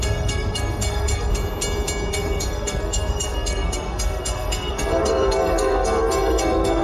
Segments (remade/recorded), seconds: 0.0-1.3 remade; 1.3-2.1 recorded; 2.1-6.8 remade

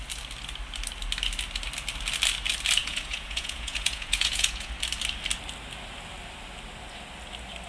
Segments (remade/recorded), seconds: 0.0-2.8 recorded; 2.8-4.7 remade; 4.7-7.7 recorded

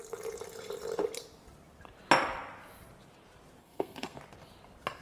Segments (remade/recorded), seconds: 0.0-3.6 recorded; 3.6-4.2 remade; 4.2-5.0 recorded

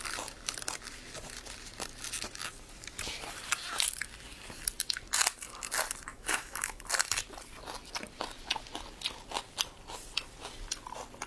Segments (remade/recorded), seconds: 0.0-6.1 recorded; 6.1-6.8 remade; 6.8-11.3 recorded

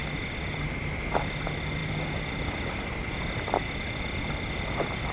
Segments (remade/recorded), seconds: 0.0-5.1 recorded

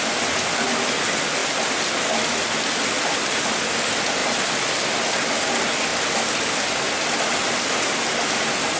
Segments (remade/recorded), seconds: 0.0-8.8 recorded